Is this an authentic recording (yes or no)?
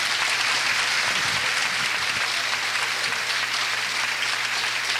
no